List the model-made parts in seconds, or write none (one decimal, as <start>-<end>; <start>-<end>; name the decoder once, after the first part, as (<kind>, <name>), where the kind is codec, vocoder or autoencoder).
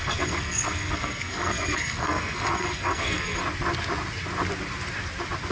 0.0-3.4 (codec, SNAC)